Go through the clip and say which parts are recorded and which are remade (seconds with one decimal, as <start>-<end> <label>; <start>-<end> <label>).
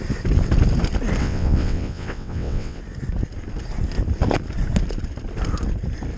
0.0-1.2 recorded; 1.2-2.8 remade; 2.8-6.2 recorded